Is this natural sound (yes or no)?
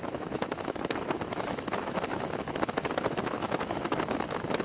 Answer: no